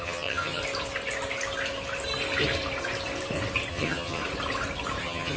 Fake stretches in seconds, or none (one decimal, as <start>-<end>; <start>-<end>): 0.0-0.6; 3.7-4.2; 5.0-5.4